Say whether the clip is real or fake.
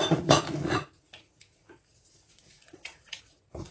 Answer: fake